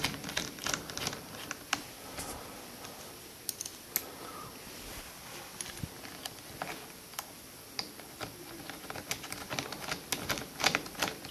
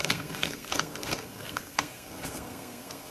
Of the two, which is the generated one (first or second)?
second